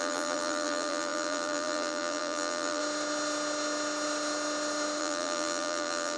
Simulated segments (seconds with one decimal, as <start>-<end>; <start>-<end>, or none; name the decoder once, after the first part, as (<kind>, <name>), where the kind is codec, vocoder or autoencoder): 0.0-2.8 (vocoder, BigVGAN v2); 5.0-6.2